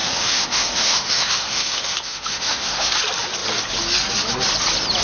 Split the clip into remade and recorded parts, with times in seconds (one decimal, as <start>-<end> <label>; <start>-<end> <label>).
0.0-3.0 remade; 3.0-5.0 recorded